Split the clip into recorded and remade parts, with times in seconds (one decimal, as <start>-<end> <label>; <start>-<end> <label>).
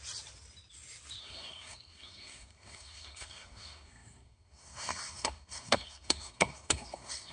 0.0-1.2 recorded; 1.2-7.3 remade